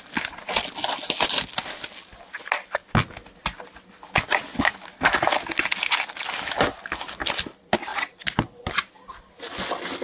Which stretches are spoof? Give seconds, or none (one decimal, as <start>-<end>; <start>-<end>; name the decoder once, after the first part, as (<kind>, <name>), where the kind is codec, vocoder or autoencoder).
none